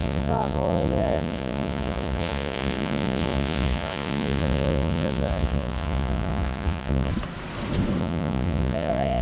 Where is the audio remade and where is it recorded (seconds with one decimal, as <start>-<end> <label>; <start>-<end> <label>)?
0.0-7.1 remade; 7.1-8.0 recorded; 8.0-9.2 remade